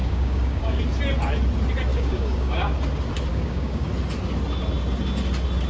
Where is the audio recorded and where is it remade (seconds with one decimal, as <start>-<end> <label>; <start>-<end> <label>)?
0.0-0.8 remade; 0.8-1.9 recorded; 1.9-2.7 remade; 2.7-3.3 recorded; 3.3-3.9 remade; 3.9-5.7 recorded